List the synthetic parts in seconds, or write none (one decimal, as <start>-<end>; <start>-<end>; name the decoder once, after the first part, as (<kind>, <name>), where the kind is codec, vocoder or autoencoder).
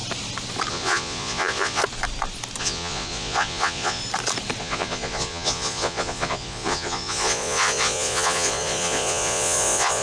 0.7-1.8 (vocoder, Vocos); 2.6-4.0; 4.6-10.0